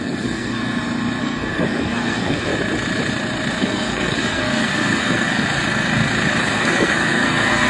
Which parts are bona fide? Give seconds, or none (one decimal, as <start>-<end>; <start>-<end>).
0.6-1.2; 2.5-3.6; 5.6-6.4